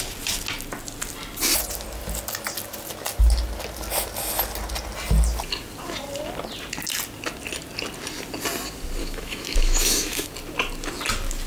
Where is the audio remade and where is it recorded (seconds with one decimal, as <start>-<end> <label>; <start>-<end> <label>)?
0.0-9.0 recorded; 9.0-10.3 remade; 10.3-11.5 recorded